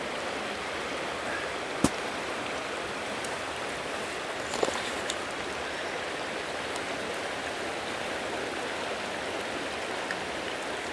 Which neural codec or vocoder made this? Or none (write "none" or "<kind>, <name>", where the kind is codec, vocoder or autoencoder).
none